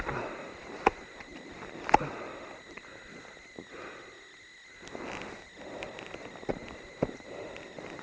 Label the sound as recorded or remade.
recorded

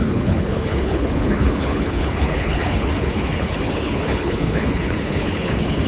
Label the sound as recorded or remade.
remade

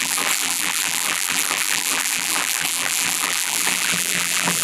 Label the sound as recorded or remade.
remade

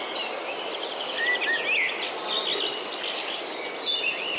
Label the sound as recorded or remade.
recorded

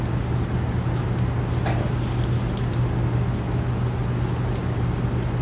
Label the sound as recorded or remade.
recorded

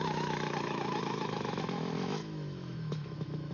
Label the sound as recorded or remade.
remade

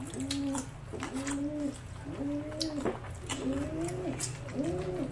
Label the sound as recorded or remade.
recorded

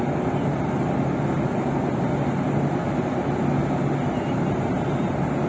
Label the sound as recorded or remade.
recorded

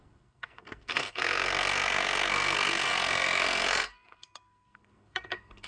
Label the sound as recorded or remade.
remade